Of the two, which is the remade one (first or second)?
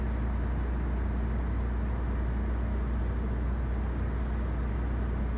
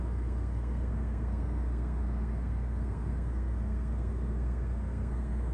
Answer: second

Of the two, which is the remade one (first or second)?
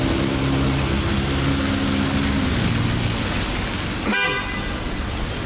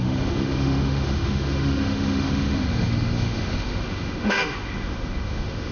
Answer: second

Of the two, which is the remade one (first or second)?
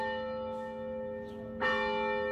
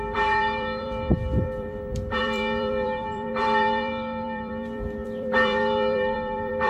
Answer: second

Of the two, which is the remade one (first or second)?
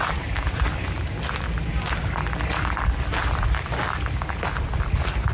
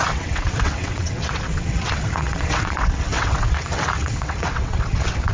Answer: second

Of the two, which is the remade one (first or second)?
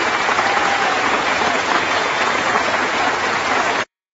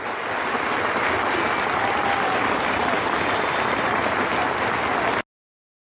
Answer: first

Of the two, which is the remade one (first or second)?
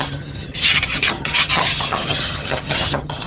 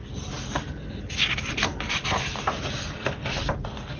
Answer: first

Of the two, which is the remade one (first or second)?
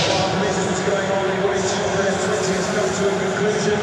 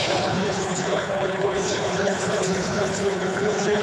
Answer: second